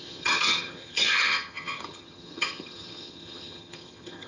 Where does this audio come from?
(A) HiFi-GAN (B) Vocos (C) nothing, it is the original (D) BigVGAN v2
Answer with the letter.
A